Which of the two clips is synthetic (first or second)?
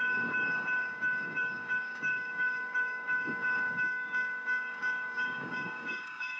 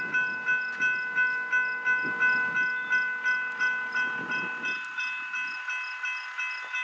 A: first